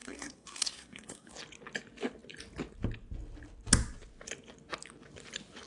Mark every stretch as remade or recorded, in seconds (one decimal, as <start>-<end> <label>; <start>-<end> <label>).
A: 0.0-1.3 remade; 1.3-5.7 recorded